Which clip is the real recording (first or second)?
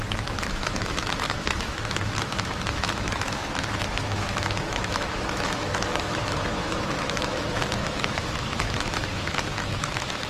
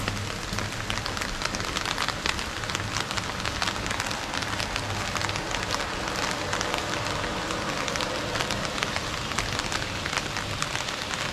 second